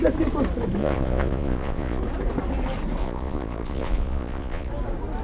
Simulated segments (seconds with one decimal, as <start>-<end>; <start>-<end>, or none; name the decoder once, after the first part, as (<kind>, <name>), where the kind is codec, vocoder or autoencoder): 0.8-2.0 (vocoder, Vocos); 3.0-4.7

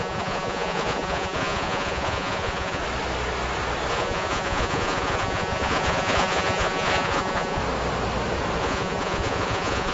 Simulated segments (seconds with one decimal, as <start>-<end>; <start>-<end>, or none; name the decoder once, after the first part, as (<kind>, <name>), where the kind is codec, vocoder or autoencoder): 0.0-2.8 (vocoder, Vocos); 3.9-7.6; 8.6-9.9

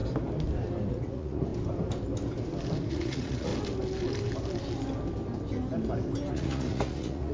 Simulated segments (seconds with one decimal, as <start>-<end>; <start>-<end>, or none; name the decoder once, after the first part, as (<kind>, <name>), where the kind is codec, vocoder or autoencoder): 0.9-1.5 (vocoder, Vocos); 2.9-3.5; 6.3-7.3

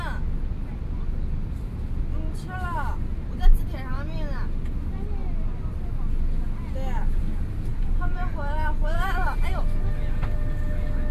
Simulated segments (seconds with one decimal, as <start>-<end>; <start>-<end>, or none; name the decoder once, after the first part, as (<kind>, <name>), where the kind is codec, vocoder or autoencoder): 7.7-9.5 (vocoder, Vocos)

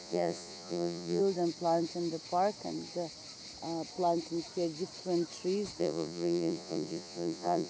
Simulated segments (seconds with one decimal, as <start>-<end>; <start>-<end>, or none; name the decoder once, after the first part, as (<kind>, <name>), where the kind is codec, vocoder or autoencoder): 0.0-1.2 (vocoder, Vocos); 5.8-7.7

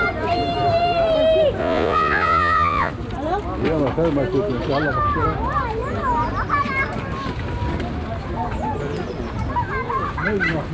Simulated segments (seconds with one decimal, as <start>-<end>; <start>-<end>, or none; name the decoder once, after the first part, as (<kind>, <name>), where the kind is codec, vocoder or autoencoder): 1.6-2.9 (vocoder, Vocos)

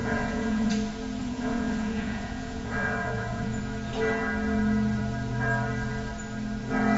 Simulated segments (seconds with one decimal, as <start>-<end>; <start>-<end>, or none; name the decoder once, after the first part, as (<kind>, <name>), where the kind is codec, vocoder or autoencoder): 0.0-0.7 (vocoder, Vocos); 1.2-3.6

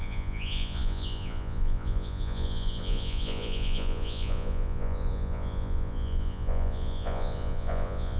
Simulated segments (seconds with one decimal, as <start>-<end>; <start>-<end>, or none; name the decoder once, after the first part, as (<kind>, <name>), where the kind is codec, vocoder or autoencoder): 0.0-8.2 (vocoder, Vocos)